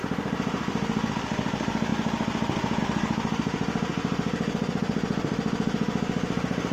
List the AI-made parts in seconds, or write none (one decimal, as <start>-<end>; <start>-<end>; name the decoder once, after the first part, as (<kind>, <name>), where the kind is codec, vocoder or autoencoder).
0.0-1.1 (vocoder, BigVGAN v2)